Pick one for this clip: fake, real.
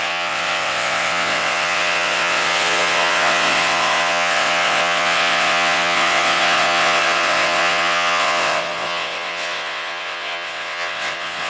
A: fake